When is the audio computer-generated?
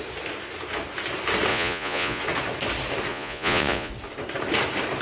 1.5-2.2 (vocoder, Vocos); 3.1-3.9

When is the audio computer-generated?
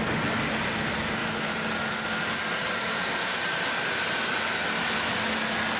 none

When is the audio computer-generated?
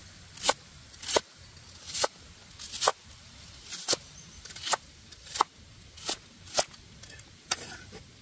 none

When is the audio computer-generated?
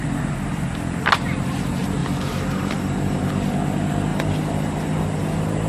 2.0-3.3 (vocoder, BigVGAN v2); 4.1-5.3